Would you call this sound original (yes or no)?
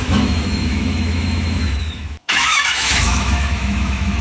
no